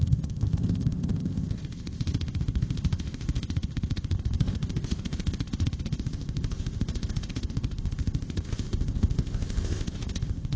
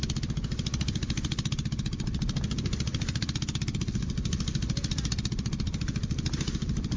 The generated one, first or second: first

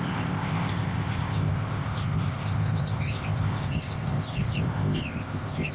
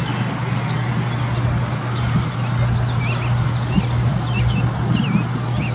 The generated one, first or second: first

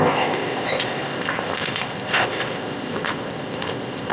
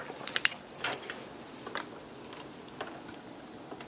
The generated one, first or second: first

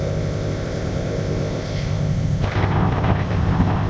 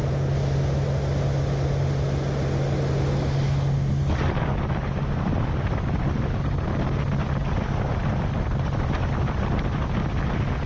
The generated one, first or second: first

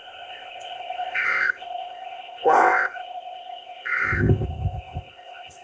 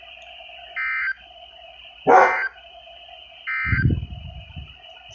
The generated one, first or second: first